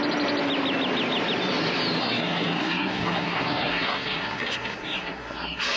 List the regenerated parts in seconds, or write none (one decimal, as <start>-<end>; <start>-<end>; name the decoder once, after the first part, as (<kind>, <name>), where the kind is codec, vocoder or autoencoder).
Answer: 2.0-5.8 (codec, SNAC)